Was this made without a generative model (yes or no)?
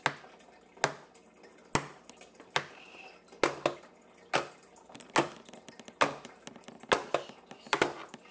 yes